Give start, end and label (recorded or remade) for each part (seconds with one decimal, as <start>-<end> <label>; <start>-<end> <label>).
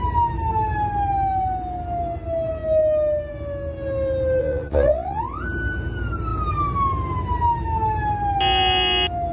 0.0-4.4 recorded; 4.4-5.2 remade; 5.2-9.3 recorded